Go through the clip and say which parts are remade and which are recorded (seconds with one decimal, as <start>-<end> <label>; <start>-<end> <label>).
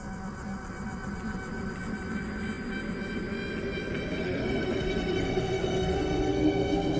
0.0-4.2 recorded; 4.2-7.0 remade